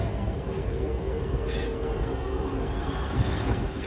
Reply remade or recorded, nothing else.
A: remade